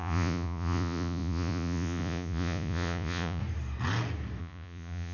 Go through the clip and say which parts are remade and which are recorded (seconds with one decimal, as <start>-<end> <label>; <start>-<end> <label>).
0.0-3.4 remade; 3.4-4.4 recorded; 4.4-5.1 remade